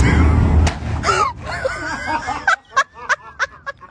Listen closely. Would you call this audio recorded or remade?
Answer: recorded